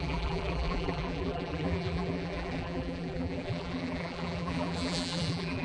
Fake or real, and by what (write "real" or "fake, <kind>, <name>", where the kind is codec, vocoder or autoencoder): fake, vocoder, BigVGAN v2